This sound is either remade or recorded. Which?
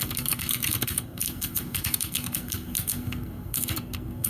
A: remade